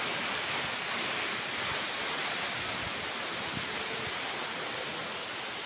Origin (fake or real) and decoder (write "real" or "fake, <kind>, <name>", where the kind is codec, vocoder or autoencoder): real